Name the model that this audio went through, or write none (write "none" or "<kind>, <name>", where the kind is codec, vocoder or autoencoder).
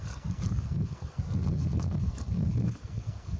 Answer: codec, SNAC